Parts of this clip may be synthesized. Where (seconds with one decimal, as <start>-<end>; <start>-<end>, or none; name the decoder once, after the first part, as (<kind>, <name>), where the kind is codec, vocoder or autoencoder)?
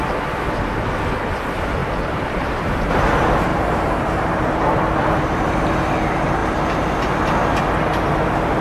1.8-2.8 (vocoder, BigVGAN v2); 3.5-5.7